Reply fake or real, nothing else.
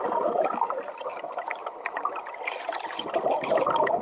real